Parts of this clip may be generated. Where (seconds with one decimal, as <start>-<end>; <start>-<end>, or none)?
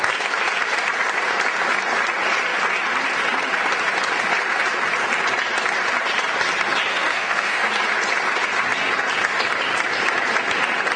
6.9-7.7